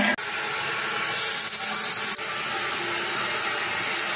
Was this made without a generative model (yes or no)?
yes